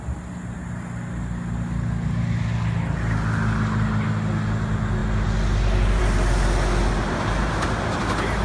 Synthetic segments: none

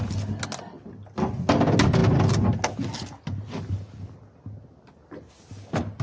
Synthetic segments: none

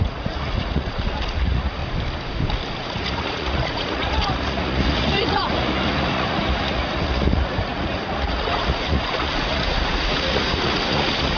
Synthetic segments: 0.0-1.8 (vocoder, Vocos); 2.8-11.4

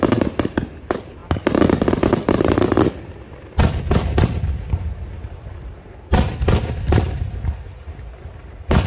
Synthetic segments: none

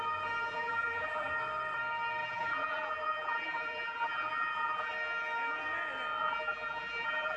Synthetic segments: 0.5-1.3 (vocoder, BigVGAN v2); 2.2-4.9; 6.2-7.4

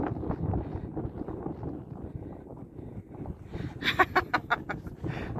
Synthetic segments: none